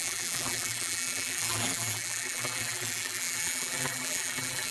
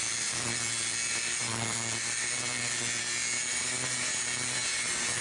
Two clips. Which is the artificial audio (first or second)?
first